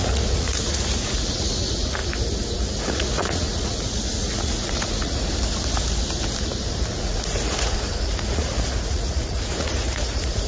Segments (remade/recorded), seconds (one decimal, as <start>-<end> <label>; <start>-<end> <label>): 0.0-2.0 remade; 2.0-2.8 recorded; 2.8-5.3 remade; 5.3-6.9 recorded; 6.9-10.5 remade